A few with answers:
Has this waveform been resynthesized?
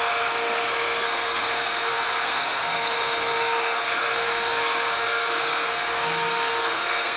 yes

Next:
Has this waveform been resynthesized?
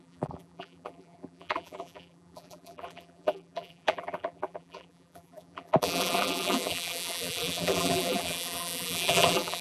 yes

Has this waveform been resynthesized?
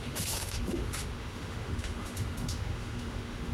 yes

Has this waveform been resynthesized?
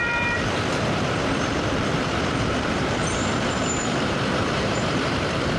yes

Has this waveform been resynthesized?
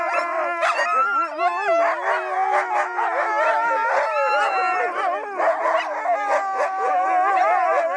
no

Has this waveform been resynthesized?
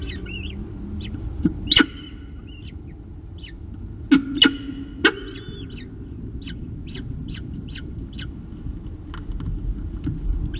no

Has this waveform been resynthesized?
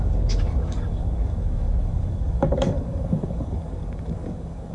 yes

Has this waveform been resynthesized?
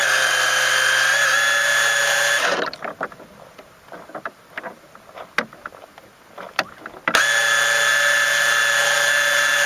no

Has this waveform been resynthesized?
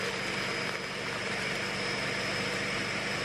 no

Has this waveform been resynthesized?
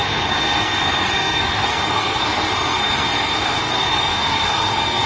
yes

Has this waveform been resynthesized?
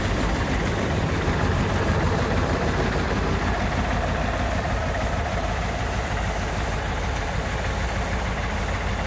yes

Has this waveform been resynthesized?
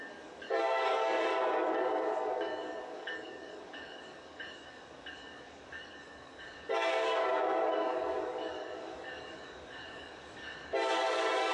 yes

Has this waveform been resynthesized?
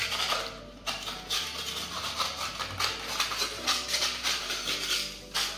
no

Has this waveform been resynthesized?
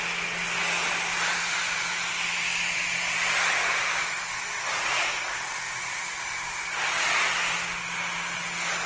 no